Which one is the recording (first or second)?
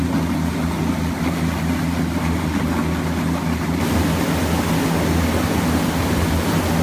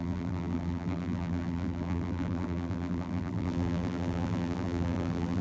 first